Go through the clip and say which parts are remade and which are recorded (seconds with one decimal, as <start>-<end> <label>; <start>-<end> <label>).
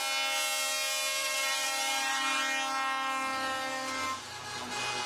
0.0-1.2 recorded; 1.2-2.4 remade; 2.4-5.1 recorded